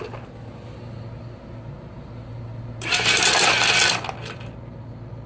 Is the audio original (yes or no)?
yes